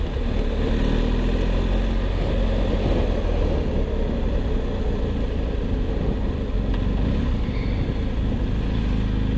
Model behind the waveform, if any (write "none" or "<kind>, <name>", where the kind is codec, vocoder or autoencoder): none